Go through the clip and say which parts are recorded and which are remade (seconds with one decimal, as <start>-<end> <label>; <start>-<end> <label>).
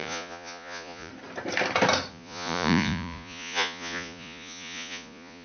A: 0.0-1.1 remade; 1.1-2.1 recorded; 2.1-5.4 remade